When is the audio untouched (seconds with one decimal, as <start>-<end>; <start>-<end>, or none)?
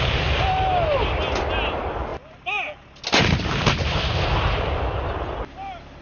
0.0-6.0